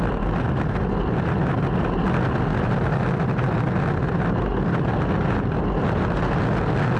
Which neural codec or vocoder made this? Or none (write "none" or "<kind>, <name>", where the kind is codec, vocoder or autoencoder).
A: none